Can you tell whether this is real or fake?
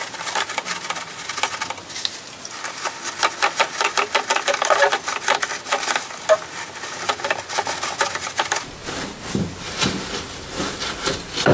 real